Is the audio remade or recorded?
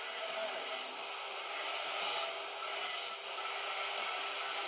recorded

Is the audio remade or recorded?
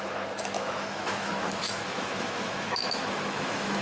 remade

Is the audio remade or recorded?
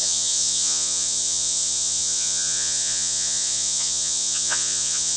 remade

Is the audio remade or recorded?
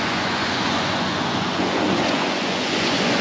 remade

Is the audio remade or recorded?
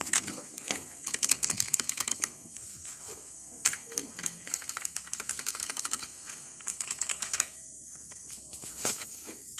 remade